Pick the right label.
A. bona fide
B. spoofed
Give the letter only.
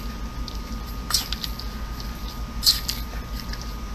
A